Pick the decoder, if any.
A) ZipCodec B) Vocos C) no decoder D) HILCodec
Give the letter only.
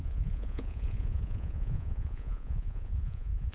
B